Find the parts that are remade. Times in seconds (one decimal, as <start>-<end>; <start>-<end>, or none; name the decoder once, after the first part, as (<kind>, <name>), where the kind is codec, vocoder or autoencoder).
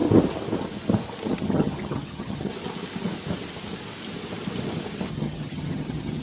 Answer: 1.3-2.5 (vocoder, HiFi-GAN); 5.1-6.2